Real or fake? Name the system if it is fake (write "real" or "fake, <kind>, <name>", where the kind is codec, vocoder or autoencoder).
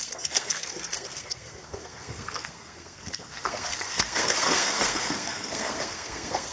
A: fake, codec, SNAC